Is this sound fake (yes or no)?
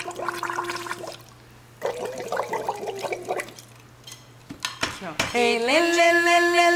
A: no